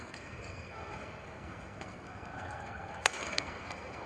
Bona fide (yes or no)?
no